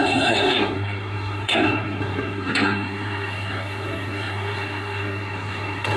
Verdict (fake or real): fake